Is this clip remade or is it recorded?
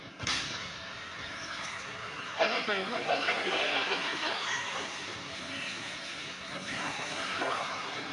remade